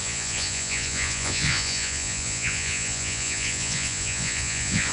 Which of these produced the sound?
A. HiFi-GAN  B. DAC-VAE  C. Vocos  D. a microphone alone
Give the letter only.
C